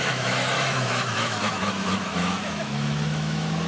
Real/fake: fake